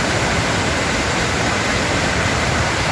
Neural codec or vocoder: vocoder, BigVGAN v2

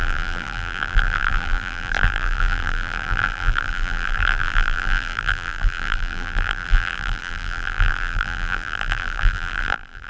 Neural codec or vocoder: vocoder, BigVGAN v2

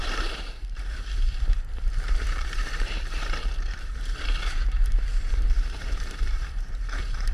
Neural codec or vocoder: vocoder, BigVGAN v2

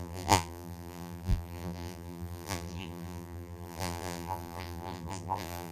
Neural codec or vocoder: vocoder, BigVGAN v2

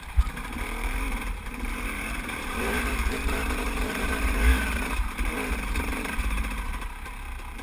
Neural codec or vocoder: vocoder, BigVGAN v2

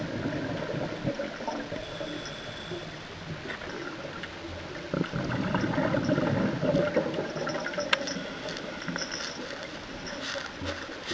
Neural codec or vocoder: none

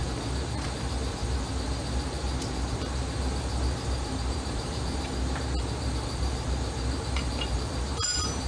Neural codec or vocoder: vocoder, BigVGAN v2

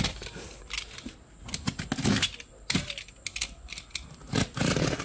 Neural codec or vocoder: none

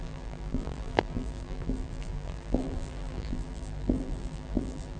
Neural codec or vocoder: vocoder, BigVGAN v2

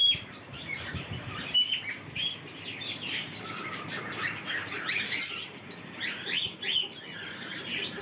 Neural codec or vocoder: vocoder, BigVGAN v2